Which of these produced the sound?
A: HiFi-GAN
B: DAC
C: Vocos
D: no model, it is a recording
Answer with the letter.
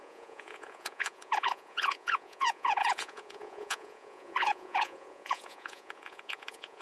C